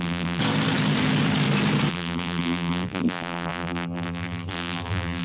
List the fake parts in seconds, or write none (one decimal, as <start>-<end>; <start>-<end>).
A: 0.0-0.4; 1.9-5.2